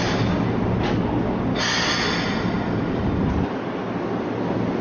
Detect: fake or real real